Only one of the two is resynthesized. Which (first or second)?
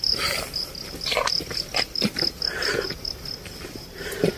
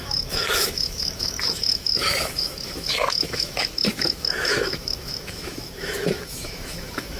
second